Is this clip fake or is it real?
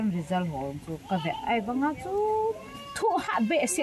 real